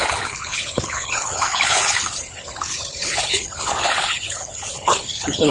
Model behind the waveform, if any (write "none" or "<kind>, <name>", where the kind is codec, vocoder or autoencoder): codec, HILCodec